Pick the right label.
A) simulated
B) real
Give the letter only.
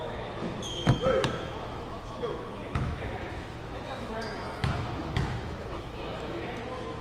A